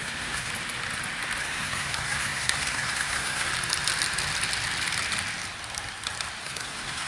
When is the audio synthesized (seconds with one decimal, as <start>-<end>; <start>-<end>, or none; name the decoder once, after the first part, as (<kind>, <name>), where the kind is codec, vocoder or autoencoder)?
0.0-0.5 (codec, SNAC); 1.4-3.5; 6.4-7.1